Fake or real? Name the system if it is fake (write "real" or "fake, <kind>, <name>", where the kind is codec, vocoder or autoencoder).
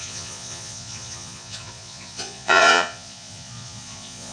fake, vocoder, Vocos